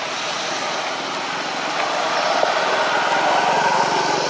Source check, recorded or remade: recorded